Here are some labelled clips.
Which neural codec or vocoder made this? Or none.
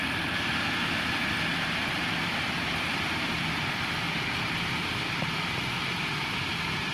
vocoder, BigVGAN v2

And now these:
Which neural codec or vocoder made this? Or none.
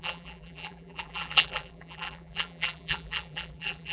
vocoder, BigVGAN v2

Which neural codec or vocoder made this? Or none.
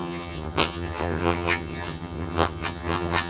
vocoder, HiFi-GAN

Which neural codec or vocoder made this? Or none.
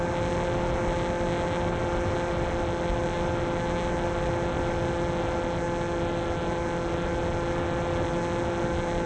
none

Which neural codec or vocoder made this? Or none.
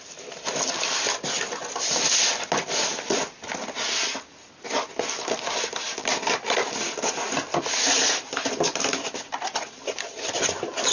none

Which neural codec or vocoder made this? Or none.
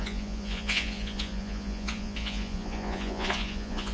vocoder, Vocos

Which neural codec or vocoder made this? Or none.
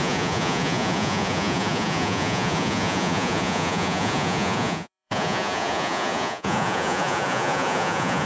vocoder, Vocos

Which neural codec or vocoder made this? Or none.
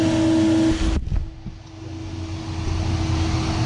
none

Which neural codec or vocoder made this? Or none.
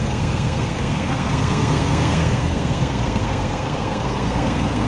codec, SNAC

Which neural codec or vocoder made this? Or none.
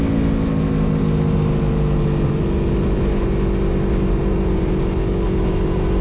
none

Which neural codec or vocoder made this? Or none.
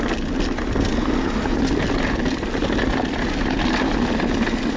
none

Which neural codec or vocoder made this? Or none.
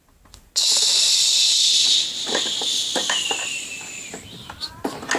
none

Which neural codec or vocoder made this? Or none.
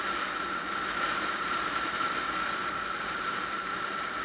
vocoder, BigVGAN v2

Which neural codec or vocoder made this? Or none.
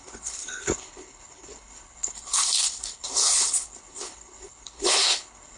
codec, HILCodec